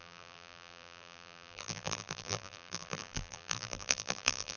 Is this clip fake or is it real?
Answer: fake